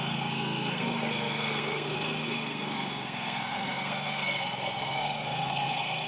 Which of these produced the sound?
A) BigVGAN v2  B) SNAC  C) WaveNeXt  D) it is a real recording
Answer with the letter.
B